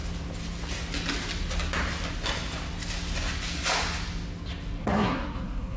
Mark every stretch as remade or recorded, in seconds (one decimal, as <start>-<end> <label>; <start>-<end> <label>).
0.0-4.8 recorded; 4.8-5.8 remade